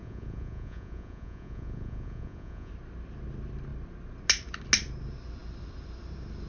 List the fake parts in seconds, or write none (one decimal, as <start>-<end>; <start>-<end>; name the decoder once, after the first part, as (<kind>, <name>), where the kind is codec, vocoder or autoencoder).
0.0-2.7 (vocoder, Vocos)